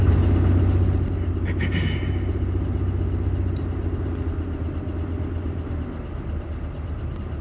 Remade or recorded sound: recorded